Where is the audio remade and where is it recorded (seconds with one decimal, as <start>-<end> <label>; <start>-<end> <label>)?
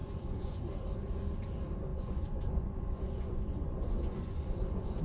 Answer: 0.0-0.6 remade; 0.6-1.9 recorded; 1.9-5.0 remade